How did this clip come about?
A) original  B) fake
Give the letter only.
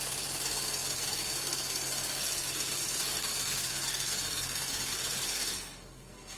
B